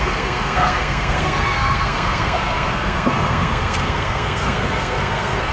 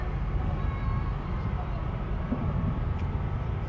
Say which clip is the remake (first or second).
first